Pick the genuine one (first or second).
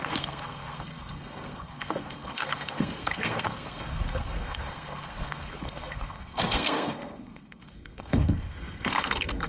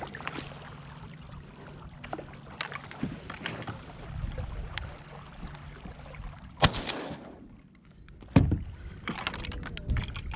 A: second